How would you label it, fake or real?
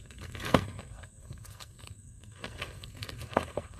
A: fake